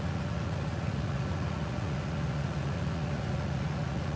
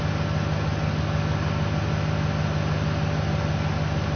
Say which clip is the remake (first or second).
first